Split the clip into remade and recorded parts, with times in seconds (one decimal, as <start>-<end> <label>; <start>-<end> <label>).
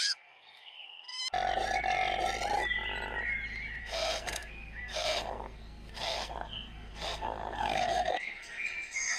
0.0-1.2 remade; 1.2-3.8 recorded; 3.8-9.2 remade